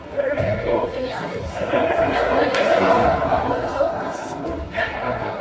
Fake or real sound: fake